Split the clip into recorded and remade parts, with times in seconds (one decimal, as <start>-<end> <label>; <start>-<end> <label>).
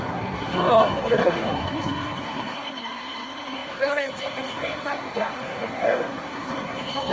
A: 0.0-7.1 remade